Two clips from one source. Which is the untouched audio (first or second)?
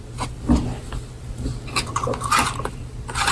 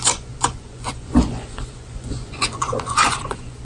first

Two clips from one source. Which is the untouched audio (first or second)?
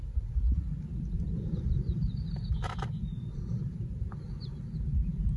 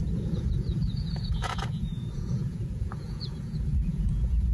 first